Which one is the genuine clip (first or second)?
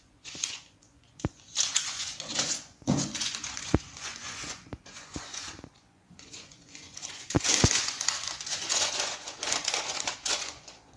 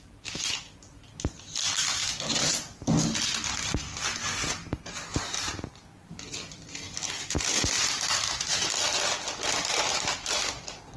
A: second